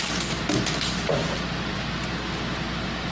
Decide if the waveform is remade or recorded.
recorded